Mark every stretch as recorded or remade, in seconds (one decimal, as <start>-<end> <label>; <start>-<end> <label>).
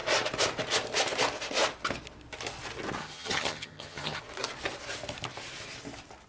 0.0-3.0 recorded; 3.0-4.2 remade; 4.2-6.3 recorded